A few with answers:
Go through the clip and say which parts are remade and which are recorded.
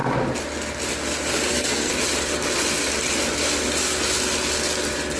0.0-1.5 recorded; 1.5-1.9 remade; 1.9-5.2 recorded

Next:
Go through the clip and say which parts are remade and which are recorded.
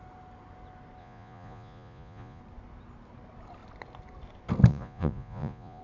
0.0-1.0 recorded; 1.0-2.4 remade; 2.4-4.7 recorded; 4.7-5.8 remade